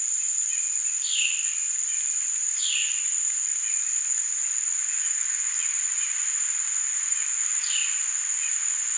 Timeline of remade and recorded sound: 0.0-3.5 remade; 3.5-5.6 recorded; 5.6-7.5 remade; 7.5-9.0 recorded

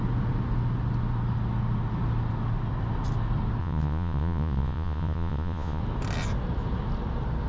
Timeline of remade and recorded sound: 0.0-3.6 recorded; 3.6-5.8 remade; 5.8-7.5 recorded

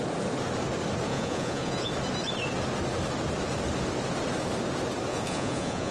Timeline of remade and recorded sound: 0.0-1.1 recorded; 1.1-1.9 remade; 1.9-5.1 recorded; 5.1-5.9 remade

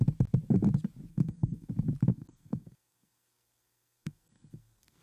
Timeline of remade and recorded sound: 0.0-1.1 recorded; 1.1-1.7 remade; 1.7-2.1 recorded; 2.1-5.0 remade

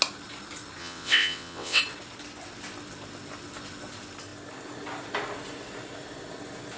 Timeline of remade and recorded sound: 0.0-0.8 recorded; 0.8-1.8 remade; 1.8-6.8 recorded

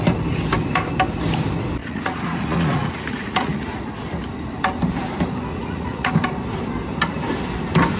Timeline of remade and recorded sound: 0.0-1.8 recorded; 1.8-3.9 remade; 3.9-5.5 recorded; 5.5-6.1 remade; 6.1-8.0 recorded